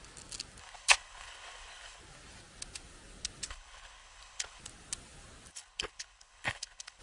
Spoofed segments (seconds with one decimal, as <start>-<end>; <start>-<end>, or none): 0.6-2.0; 3.5-4.6; 5.5-7.0